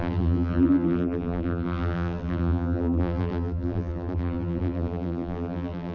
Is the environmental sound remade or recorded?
remade